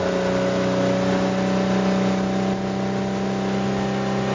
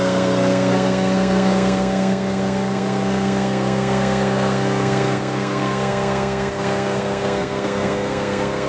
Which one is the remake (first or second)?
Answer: second